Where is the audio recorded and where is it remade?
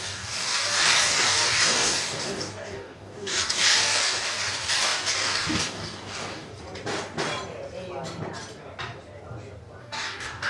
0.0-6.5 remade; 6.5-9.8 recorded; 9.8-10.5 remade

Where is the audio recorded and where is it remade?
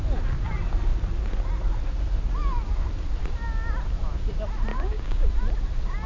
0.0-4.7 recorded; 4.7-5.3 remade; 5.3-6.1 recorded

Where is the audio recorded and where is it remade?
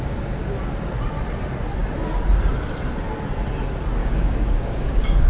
0.0-4.0 recorded; 4.0-5.3 remade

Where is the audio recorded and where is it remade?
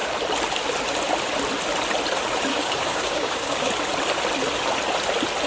0.0-2.5 recorded; 2.5-3.7 remade; 3.7-5.5 recorded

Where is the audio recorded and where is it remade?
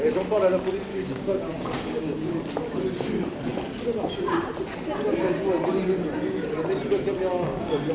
0.0-0.9 recorded; 0.9-2.3 remade; 2.3-7.3 recorded; 7.3-7.9 remade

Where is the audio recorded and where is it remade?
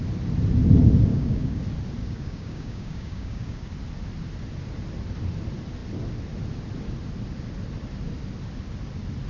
0.0-1.1 recorded; 1.1-1.6 remade; 1.6-2.0 recorded; 2.0-3.7 remade; 3.7-9.3 recorded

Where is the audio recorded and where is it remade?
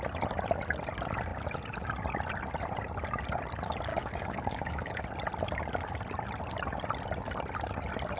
0.0-3.9 recorded; 3.9-5.0 remade; 5.0-8.2 recorded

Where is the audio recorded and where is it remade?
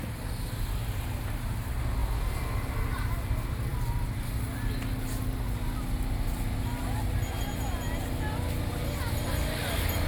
0.0-10.1 recorded